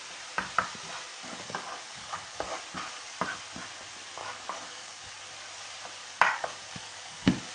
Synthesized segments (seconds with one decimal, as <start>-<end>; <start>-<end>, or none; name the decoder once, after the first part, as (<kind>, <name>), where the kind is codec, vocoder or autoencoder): 1.1-2.6 (codec, DAC); 4.2-5.1; 6.0-7.5